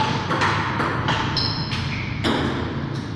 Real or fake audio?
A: real